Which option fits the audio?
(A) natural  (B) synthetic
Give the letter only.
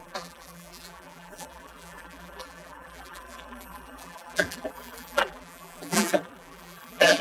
B